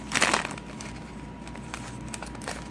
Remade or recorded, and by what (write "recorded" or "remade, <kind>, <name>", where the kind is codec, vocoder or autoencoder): recorded